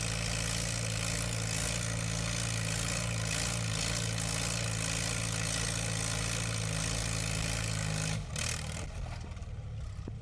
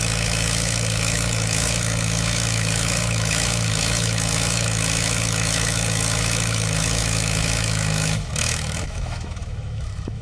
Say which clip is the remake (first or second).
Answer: second